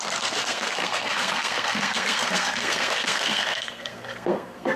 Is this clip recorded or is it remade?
remade